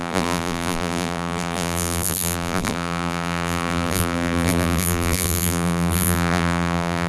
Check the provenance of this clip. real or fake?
fake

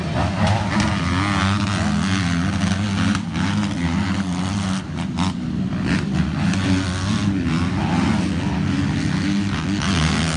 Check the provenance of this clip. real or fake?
real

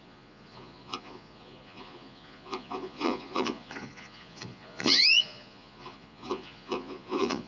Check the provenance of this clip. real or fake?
fake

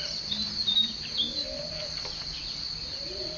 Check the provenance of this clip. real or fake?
real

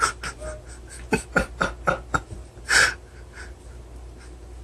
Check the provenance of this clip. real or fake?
real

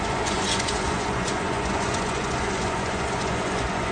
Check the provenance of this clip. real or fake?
fake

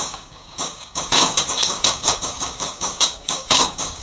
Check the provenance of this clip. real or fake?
fake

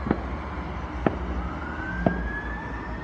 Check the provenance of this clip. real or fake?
real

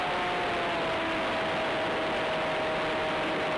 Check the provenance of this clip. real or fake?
real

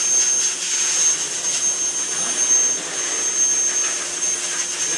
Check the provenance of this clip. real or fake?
real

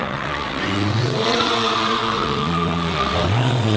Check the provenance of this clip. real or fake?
fake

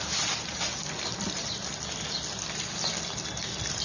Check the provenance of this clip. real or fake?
real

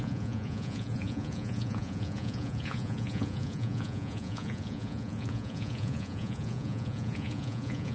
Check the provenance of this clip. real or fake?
fake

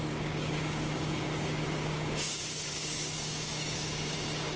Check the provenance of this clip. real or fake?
fake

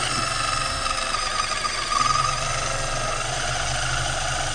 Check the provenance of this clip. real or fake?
real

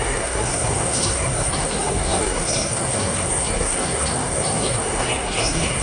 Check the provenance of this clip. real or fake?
fake